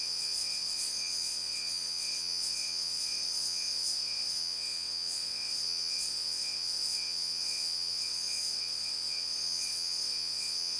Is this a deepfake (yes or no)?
yes